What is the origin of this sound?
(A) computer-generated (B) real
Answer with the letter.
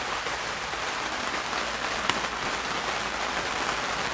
B